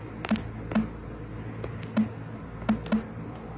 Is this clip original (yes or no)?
yes